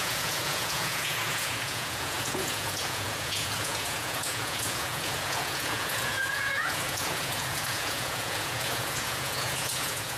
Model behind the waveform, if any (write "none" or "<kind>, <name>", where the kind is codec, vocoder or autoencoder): vocoder, Vocos